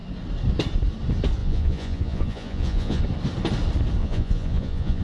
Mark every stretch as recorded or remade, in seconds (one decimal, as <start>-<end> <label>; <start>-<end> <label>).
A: 0.0-1.4 recorded; 1.4-3.0 remade; 3.0-4.0 recorded; 4.0-5.0 remade